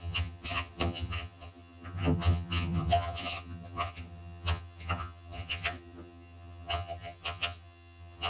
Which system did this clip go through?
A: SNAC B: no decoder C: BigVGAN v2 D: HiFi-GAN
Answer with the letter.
D